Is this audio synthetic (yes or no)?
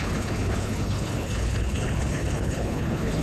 yes